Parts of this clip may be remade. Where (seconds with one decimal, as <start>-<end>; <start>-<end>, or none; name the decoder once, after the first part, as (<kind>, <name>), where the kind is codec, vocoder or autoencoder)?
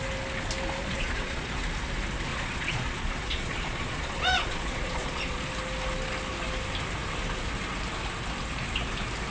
0.8-1.5 (vocoder, Vocos); 2.3-5.4